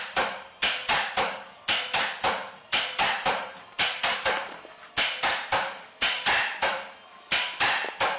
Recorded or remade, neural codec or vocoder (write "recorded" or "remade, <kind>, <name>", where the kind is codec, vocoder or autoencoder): remade, vocoder, BigVGAN v2